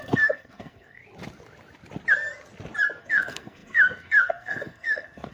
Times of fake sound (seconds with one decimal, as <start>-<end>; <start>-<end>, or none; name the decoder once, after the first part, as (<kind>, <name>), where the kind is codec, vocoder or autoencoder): 0.0-1.0 (codec, SNAC); 3.0-5.3